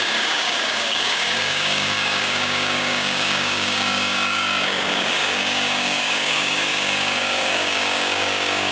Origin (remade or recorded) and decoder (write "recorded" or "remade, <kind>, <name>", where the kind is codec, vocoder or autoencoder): remade, codec, DAC